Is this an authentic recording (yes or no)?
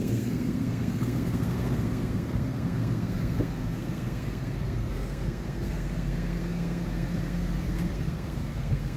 no